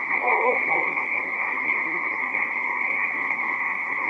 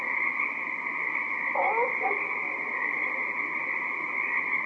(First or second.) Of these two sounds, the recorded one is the second